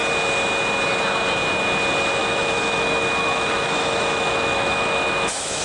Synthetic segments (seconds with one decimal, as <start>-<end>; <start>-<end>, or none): 2.2-5.6